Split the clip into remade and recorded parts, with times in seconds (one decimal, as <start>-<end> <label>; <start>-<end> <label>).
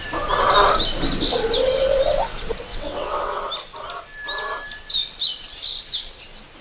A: 0.0-2.7 recorded; 2.7-3.4 remade; 3.4-6.6 recorded